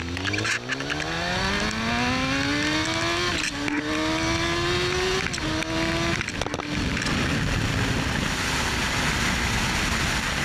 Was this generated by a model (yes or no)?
no